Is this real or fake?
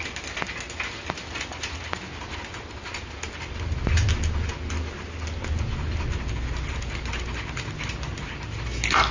real